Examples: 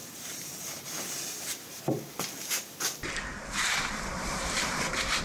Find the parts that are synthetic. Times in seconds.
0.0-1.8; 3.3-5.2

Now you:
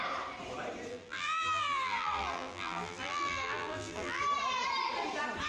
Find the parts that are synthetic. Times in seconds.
0.9-4.2